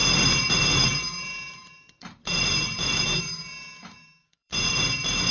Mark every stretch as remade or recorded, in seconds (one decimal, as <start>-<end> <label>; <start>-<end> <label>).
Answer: 0.0-5.3 remade